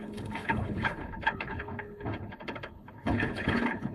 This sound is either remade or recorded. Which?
remade